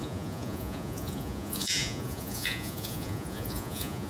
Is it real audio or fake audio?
fake